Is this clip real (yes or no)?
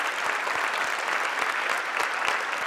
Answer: yes